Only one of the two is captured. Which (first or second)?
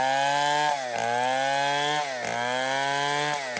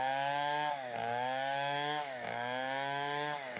first